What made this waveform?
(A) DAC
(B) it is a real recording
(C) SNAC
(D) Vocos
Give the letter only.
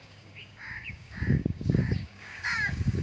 A